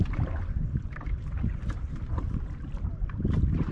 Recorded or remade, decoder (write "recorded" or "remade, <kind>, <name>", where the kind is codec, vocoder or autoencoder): remade, vocoder, BigVGAN v2